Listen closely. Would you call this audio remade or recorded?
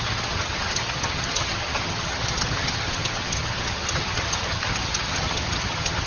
remade